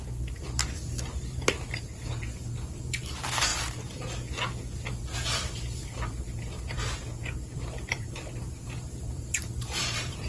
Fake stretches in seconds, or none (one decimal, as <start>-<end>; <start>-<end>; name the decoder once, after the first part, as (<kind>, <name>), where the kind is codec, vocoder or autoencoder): 0.0-3.5 (vocoder, BigVGAN v2); 4.9-10.3